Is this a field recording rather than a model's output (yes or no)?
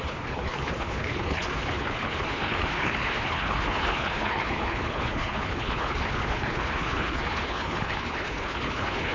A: no